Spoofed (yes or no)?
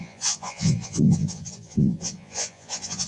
yes